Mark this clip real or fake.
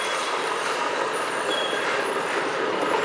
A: fake